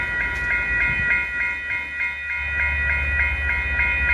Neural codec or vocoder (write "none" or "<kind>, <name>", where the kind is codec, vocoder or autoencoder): none